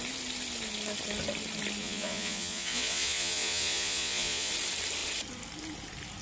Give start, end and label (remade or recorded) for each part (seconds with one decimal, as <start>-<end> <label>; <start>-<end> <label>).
0.0-1.8 recorded; 1.8-4.5 remade; 4.5-6.2 recorded